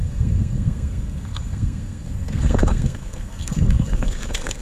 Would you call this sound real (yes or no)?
no